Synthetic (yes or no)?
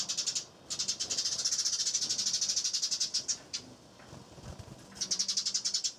no